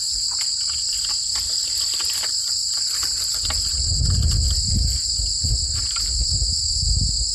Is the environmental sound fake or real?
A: real